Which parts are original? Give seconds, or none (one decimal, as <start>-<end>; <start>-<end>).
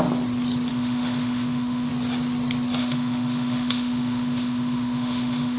0.0-0.7; 1.9-2.8